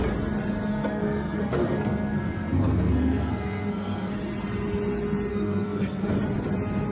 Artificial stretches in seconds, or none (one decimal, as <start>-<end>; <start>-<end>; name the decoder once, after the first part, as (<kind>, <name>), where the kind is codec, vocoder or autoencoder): 0.7-4.1 (codec, SNAC); 5.3-6.1